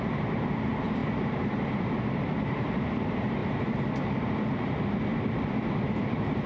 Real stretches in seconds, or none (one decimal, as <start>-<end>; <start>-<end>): 3.4-5.7